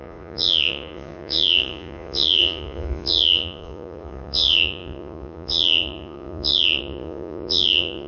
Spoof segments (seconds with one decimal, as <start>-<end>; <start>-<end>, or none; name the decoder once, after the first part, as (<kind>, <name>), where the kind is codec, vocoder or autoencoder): 0.0-8.1 (vocoder, Vocos)